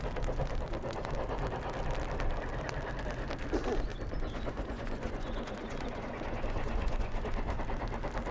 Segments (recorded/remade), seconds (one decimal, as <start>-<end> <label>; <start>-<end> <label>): 0.0-3.9 recorded; 3.9-7.6 remade; 7.6-8.3 recorded